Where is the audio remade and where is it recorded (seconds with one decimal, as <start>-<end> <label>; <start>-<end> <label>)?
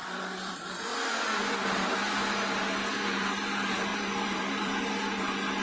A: 0.0-0.5 remade; 0.5-3.9 recorded; 3.9-4.9 remade; 4.9-5.6 recorded